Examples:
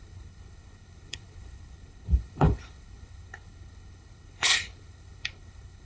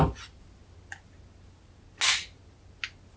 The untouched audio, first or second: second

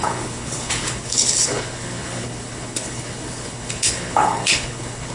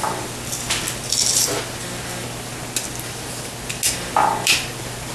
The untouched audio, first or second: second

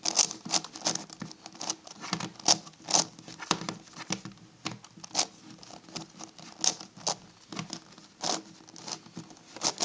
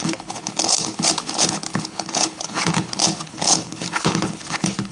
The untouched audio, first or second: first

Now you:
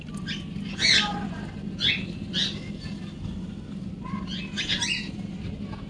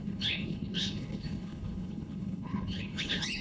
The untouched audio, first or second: first